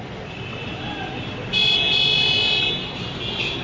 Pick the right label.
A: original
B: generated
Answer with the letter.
A